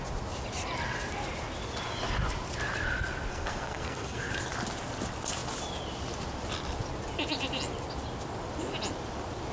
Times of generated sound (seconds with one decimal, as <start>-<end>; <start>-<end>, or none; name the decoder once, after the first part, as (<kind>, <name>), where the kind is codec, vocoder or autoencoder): 3.3-4.3 (codec, SNAC)